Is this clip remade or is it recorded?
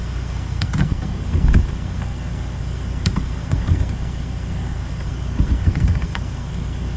remade